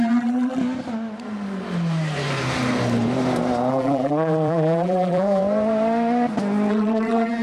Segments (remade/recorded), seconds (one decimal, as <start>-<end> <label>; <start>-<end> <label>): 0.0-0.6 remade; 0.6-3.7 recorded; 3.7-5.4 remade; 5.4-6.7 recorded; 6.7-7.4 remade